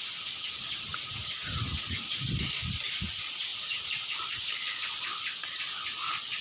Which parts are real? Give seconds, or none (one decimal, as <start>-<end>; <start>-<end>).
0.0-3.5; 4.7-6.4

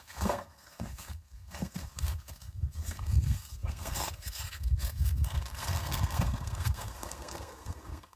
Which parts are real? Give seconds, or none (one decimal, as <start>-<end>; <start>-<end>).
none